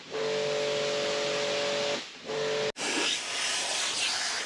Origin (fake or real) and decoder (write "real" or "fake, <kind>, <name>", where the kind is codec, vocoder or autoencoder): real